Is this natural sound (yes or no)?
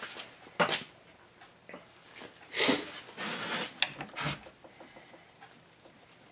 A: yes